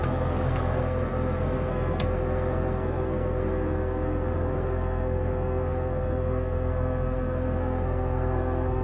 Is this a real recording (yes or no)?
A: no